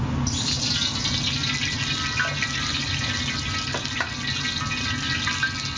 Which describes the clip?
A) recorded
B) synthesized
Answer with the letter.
A